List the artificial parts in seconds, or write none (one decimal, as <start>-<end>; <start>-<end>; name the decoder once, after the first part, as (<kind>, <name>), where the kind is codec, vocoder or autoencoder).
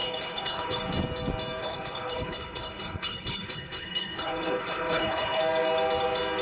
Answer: 0.0-0.8 (codec, HILCodec); 1.6-5.4